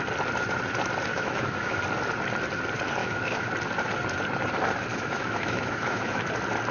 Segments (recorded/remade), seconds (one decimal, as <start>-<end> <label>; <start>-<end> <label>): 0.0-1.1 recorded; 1.1-1.8 remade; 1.8-3.0 recorded; 3.0-3.5 remade; 3.5-4.9 recorded; 4.9-6.3 remade; 6.3-6.7 recorded